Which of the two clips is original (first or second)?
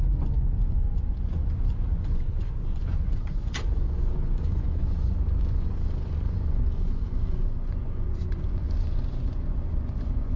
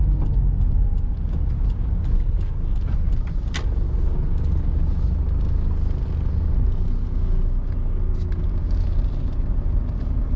second